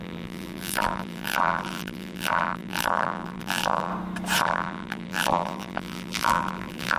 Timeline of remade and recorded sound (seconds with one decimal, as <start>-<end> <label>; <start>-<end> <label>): 0.0-3.9 remade; 3.9-4.4 recorded; 4.4-7.0 remade